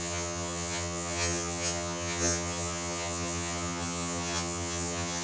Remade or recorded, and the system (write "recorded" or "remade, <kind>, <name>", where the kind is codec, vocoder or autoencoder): remade, vocoder, HiFi-GAN